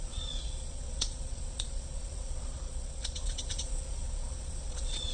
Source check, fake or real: fake